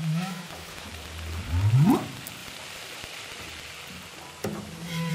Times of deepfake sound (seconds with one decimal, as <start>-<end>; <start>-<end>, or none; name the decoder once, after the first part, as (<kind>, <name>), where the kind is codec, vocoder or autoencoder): 0.0-0.9 (autoencoder, DAC-VAE)